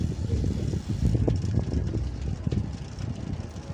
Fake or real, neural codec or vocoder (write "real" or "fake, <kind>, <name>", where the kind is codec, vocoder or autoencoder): real